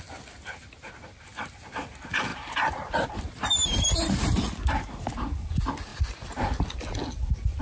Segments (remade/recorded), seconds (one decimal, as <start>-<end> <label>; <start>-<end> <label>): 0.0-7.6 recorded